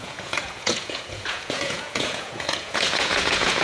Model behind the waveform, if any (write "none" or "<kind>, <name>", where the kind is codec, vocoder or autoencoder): vocoder, Vocos